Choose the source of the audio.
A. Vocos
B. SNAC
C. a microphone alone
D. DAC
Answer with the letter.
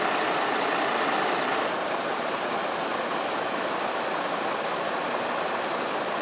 C